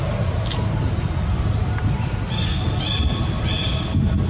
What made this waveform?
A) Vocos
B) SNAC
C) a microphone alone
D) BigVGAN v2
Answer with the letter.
C